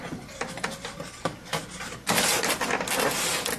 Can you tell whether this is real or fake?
real